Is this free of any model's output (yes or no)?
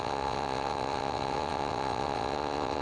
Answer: no